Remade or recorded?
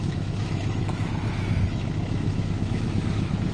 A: remade